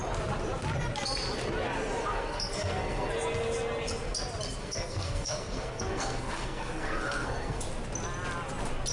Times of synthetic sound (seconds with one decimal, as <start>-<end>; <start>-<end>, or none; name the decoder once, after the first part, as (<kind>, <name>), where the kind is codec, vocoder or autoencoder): 2.0-3.1 (codec, SNAC); 4.6-7.6